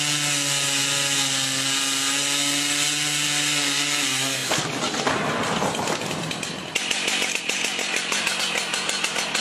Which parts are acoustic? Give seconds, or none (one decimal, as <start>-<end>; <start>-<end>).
0.0-4.4; 8.4-9.4